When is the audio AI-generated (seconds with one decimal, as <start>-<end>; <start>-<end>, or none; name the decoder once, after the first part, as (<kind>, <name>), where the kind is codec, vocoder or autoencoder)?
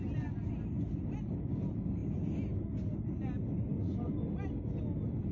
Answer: none